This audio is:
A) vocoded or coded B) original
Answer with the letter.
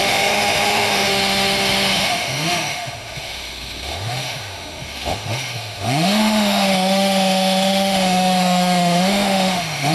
A